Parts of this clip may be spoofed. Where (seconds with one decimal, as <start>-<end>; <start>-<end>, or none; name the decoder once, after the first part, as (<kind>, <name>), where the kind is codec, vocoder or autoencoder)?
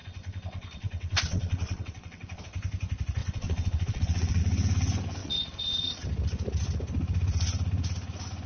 0.0-2.4 (vocoder, WaveNeXt); 3.2-4.4; 5.2-6.0